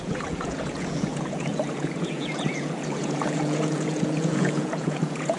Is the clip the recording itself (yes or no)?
no